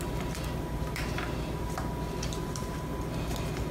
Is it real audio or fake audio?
real